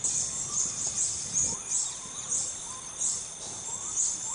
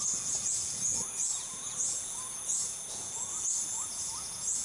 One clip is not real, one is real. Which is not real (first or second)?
second